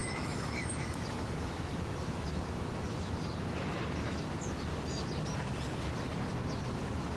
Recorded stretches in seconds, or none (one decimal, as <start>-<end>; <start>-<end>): 4.7-6.7

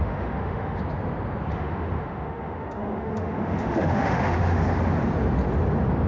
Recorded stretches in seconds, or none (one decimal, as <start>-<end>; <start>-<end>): 0.8-1.5; 4.6-6.1

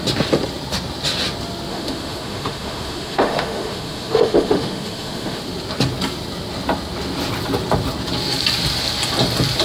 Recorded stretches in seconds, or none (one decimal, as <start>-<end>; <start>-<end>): 0.0-1.7; 5.4-9.6